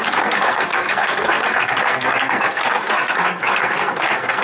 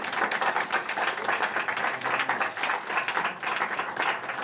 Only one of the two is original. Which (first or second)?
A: second